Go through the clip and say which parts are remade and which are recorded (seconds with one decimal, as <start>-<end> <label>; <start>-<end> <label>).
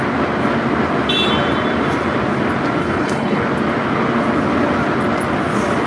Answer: 0.0-2.8 recorded; 2.8-3.4 remade; 3.4-5.9 recorded